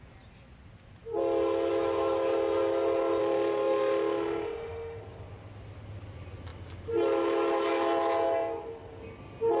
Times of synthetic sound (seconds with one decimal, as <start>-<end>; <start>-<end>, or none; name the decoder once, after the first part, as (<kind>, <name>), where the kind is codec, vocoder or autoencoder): 3.2-5.0 (autoencoder, DAC-VAE)

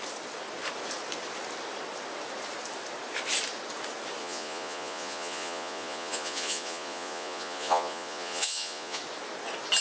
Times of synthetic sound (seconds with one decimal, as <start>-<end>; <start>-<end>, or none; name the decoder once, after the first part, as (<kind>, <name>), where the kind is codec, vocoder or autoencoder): 4.2-9.0 (vocoder, Vocos)

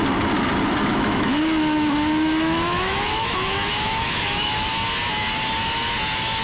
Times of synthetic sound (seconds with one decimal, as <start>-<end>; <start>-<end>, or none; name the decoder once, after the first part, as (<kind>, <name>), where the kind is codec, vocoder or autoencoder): 0.9-4.7 (autoencoder, DAC-VAE)

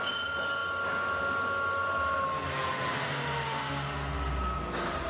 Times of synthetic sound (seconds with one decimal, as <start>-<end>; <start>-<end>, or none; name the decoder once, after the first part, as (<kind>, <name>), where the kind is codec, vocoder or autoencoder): none

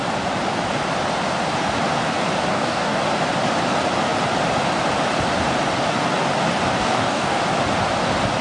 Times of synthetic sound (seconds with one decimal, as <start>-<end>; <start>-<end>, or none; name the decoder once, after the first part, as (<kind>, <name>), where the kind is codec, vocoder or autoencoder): 2.5-3.0 (codec, DAC); 6.8-7.4

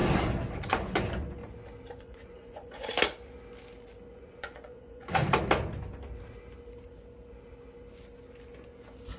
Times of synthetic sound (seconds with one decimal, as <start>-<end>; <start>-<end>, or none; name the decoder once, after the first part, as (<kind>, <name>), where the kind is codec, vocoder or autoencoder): 0.7-1.4 (vocoder, Vocos); 2.0-2.9; 4.1-5.2

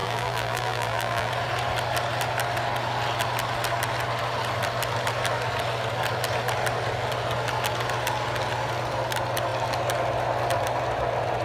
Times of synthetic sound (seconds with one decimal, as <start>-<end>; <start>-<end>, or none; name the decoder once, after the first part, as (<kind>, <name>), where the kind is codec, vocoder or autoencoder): 0.0-1.3 (vocoder, BigVGAN v2)